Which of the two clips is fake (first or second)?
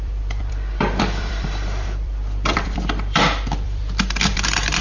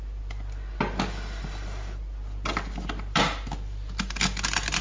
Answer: first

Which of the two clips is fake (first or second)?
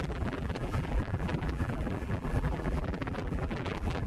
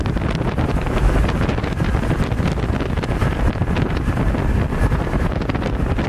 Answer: first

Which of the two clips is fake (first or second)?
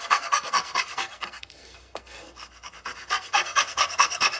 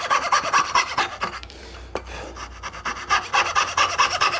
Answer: first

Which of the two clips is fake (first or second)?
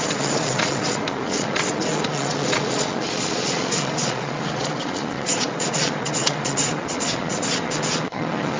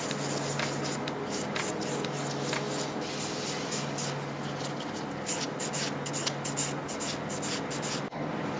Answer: first